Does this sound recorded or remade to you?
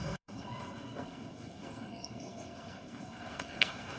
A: remade